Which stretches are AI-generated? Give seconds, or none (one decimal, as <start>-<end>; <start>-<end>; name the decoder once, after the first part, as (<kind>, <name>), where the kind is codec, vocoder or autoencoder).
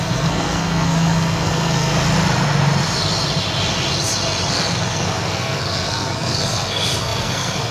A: 0.0-1.9 (codec, SNAC); 4.5-7.7